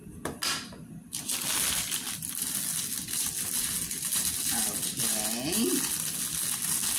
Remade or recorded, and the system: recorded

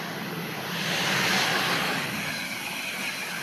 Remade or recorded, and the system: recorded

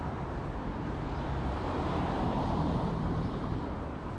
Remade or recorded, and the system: remade, vocoder, BigVGAN v2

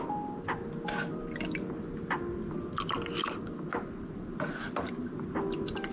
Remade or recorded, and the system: recorded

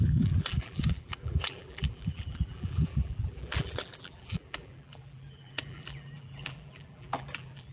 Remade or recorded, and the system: remade, vocoder, BigVGAN v2